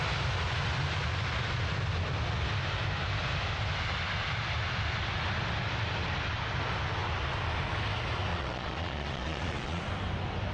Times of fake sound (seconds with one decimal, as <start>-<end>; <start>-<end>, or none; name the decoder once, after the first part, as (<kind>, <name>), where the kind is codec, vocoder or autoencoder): 8.3-9.8 (vocoder, Vocos)

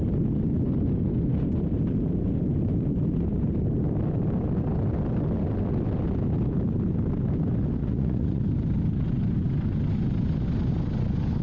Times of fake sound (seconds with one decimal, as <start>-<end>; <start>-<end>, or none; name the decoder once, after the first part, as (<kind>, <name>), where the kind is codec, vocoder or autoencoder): 7.8-8.4 (vocoder, Vocos)

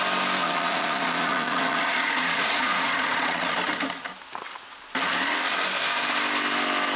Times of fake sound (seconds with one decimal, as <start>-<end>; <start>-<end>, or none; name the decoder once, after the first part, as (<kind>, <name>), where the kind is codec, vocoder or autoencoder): 0.4-3.5 (vocoder, Vocos)

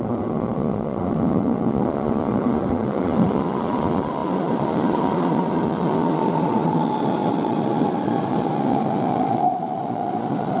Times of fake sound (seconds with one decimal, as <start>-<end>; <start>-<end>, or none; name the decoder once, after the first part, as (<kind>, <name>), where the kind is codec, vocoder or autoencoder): 0.0-10.6 (vocoder, Vocos)